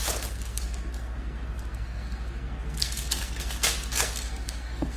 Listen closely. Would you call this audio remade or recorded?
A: remade